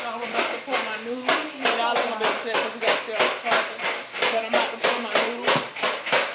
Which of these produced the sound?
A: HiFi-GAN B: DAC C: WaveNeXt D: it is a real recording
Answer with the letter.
D